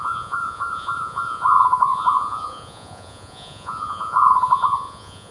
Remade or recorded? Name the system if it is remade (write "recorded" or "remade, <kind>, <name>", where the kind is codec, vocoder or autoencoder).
remade, vocoder, Vocos